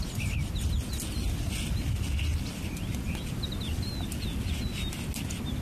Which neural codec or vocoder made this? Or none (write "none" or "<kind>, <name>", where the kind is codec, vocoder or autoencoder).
none